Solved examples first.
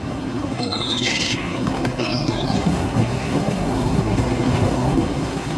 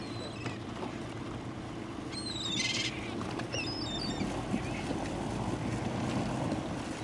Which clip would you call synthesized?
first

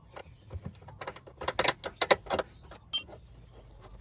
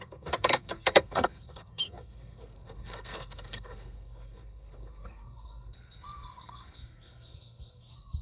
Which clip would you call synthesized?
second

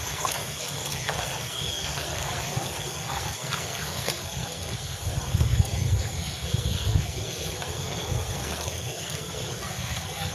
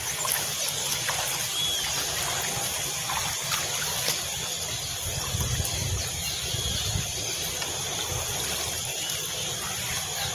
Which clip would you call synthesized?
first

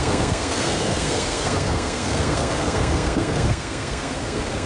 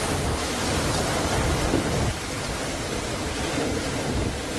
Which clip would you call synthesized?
first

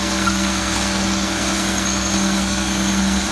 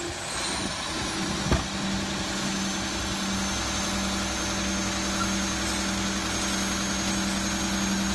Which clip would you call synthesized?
first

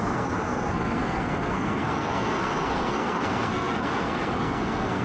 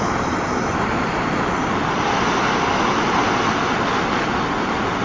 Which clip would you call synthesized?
first